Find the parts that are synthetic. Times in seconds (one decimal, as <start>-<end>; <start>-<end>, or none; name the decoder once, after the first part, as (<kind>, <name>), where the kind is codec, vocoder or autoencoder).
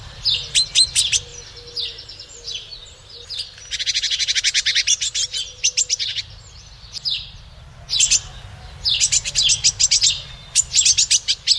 none